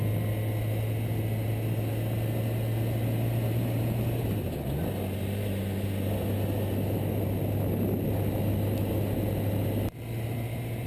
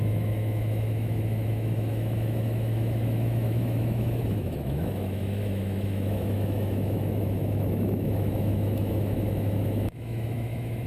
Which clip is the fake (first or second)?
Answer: second